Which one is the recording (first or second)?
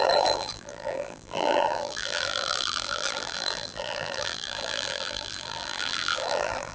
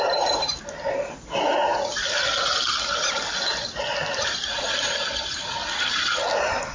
second